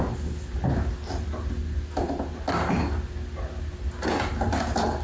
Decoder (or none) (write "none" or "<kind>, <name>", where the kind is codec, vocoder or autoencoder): none